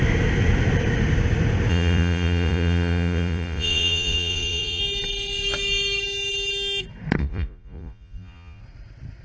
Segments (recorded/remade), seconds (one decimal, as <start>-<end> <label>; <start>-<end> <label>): 0.0-1.7 recorded; 1.7-4.8 remade; 4.8-7.2 recorded; 7.2-8.6 remade; 8.6-9.2 recorded